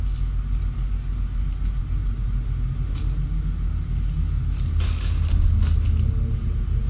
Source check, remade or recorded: recorded